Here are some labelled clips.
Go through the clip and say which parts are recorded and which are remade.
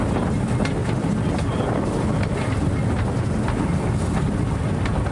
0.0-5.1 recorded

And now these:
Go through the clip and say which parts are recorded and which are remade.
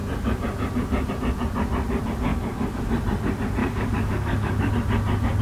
0.0-2.3 recorded; 2.3-2.8 remade; 2.8-3.6 recorded; 3.6-4.7 remade; 4.7-5.4 recorded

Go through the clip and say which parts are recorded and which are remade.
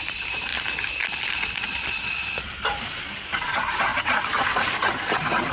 0.0-0.5 remade; 0.5-3.5 recorded; 3.5-5.5 remade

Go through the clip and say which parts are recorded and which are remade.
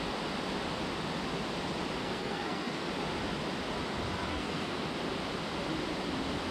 0.0-2.0 recorded; 2.0-2.9 remade; 2.9-4.3 recorded; 4.3-4.9 remade; 4.9-6.5 recorded